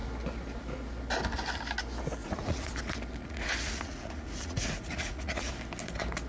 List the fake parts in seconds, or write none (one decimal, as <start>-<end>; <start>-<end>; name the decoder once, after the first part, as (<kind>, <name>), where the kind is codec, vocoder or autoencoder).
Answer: 2.2-2.7 (vocoder, Vocos); 3.2-5.5